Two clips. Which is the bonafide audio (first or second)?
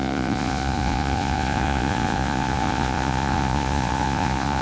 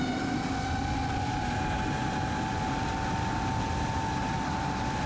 second